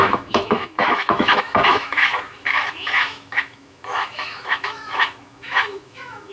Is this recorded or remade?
remade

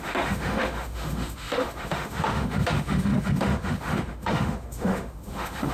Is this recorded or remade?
remade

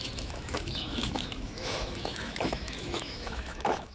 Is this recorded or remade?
remade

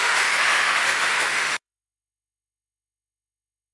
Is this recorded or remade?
remade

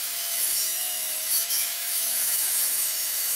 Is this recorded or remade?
remade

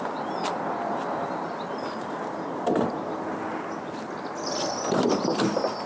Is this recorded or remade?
recorded